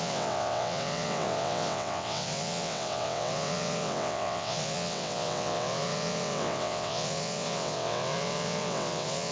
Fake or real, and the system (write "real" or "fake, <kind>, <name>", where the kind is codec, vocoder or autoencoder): fake, vocoder, WaveNeXt